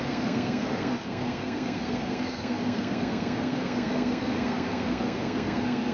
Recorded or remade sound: remade